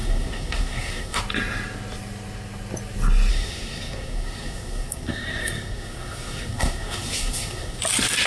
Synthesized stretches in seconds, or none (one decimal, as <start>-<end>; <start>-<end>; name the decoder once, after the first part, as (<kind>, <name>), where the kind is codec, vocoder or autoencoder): 0.0-1.2 (codec, SNAC); 3.3-7.8